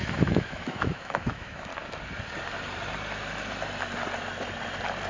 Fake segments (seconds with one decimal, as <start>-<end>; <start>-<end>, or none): 0.0-1.7